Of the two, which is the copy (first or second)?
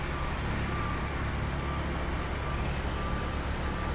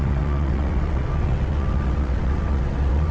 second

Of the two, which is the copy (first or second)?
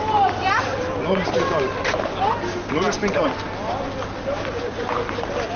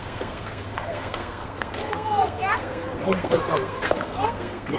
second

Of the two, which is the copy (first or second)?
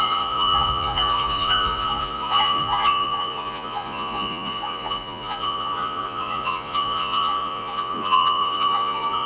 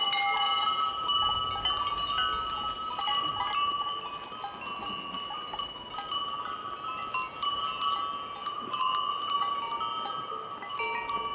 first